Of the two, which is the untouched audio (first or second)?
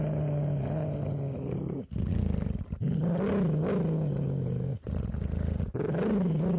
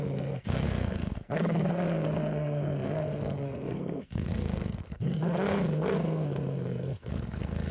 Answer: first